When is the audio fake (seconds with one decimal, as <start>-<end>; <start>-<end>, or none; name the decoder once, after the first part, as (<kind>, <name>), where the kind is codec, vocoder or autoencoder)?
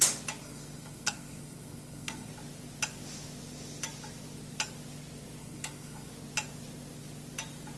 0.4-2.3 (codec, SNAC); 5.4-6.1